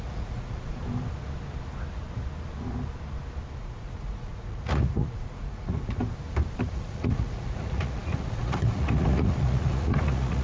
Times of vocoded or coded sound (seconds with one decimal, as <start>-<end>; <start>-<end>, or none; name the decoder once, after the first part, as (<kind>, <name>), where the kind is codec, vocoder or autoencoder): 0.0-0.8 (vocoder, Vocos); 3.6-6.0; 6.7-10.4